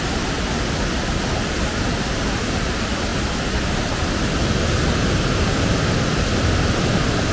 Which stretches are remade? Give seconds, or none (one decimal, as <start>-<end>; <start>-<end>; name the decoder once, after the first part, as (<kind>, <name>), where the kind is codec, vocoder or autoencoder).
none